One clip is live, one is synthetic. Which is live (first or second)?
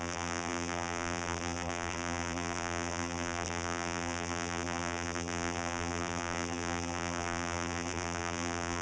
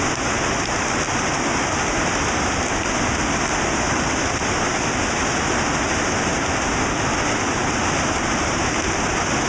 second